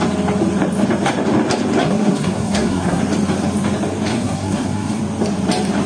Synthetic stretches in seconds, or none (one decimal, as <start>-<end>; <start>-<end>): 1.8-3.0; 4.1-5.0